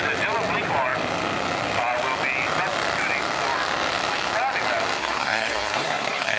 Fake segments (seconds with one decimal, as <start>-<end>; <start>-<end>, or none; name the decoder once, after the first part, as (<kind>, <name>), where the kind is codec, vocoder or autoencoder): 5.0-6.4 (codec, SNAC)